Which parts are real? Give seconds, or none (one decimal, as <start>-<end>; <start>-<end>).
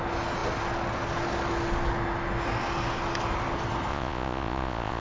0.0-3.9